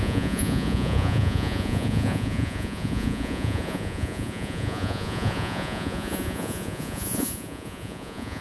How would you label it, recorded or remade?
remade